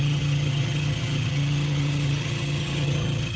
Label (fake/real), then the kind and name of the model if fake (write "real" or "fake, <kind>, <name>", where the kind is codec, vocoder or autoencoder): fake, vocoder, HiFi-GAN